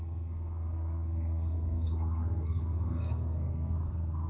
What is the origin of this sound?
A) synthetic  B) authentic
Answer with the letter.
A